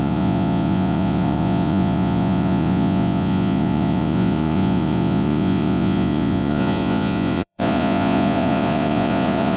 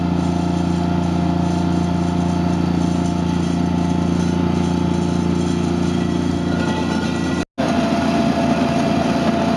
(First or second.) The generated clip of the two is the first